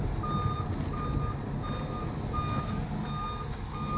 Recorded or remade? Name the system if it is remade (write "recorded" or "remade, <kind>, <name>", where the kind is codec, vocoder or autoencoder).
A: recorded